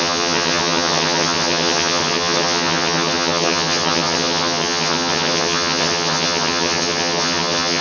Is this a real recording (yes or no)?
no